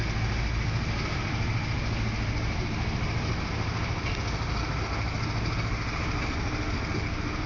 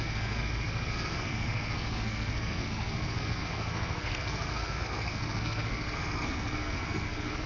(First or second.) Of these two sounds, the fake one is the second